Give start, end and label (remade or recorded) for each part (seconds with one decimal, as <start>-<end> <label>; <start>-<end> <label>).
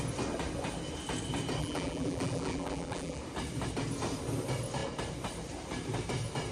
0.0-1.6 recorded; 1.6-3.2 remade; 3.2-6.5 recorded